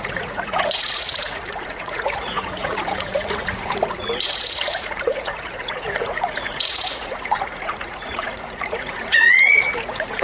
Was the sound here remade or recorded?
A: remade